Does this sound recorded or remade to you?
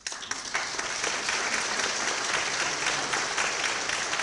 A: recorded